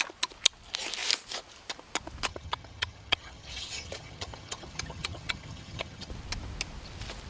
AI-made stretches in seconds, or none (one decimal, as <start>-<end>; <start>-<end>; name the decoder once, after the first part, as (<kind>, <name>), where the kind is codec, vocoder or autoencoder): 2.3-6.1 (vocoder, HiFi-GAN)